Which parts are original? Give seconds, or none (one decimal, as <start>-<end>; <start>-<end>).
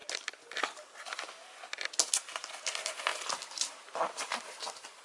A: 0.0-3.1